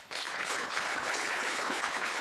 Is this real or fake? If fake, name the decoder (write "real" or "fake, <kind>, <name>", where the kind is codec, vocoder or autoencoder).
fake, codec, HILCodec